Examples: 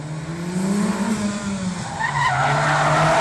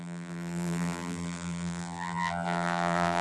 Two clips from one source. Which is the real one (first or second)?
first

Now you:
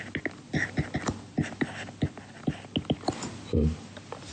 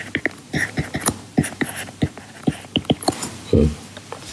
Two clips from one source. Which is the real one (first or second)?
first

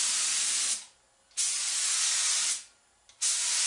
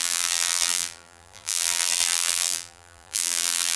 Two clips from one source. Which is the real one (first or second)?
first